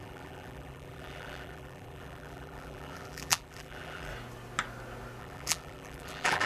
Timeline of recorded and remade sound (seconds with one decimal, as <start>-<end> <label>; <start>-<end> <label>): 0.0-4.1 remade; 4.1-5.2 recorded; 5.2-6.5 remade